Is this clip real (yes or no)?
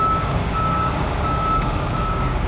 no